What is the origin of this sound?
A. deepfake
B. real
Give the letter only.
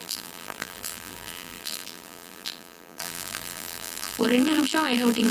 A